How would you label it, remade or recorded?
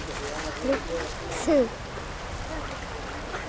recorded